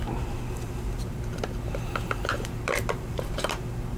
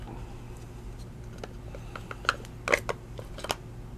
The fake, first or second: first